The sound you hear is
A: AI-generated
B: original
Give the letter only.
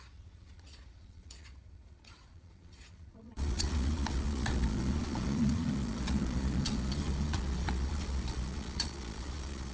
A